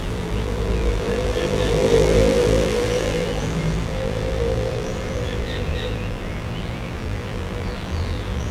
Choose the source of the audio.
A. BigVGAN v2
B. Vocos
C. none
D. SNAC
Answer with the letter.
A